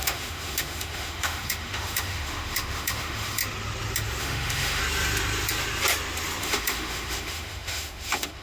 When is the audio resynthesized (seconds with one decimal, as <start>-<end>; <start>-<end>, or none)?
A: 0.0-3.4; 4.2-4.8; 6.4-8.4